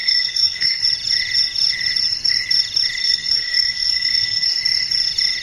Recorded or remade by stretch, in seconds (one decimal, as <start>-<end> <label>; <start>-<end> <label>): 0.0-0.8 remade; 0.8-3.0 recorded; 3.0-4.6 remade; 4.6-5.4 recorded